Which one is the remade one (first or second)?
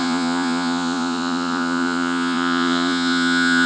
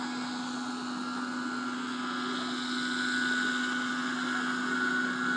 first